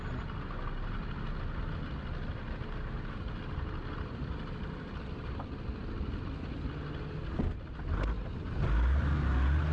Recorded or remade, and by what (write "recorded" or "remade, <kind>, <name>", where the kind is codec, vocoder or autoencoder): recorded